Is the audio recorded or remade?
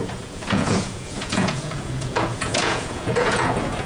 remade